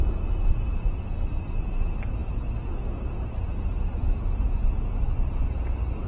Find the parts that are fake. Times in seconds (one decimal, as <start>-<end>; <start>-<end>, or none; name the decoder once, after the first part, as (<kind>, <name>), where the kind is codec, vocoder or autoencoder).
none